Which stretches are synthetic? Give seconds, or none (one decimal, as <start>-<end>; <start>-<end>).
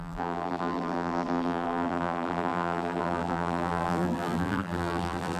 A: 0.0-5.4